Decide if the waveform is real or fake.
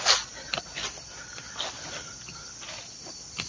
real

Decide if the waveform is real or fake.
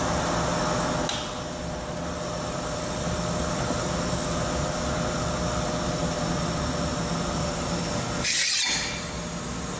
real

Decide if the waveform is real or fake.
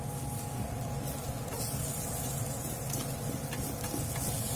real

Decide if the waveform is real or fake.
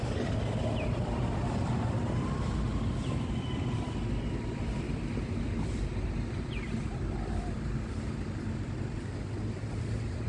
real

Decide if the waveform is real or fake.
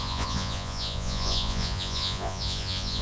fake